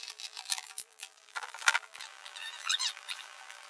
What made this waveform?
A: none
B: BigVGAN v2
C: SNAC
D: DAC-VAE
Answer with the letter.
B